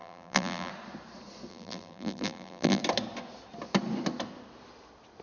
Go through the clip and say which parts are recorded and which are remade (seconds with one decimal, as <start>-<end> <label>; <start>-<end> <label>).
0.0-0.7 remade; 0.7-1.5 recorded; 1.5-2.8 remade; 2.8-5.2 recorded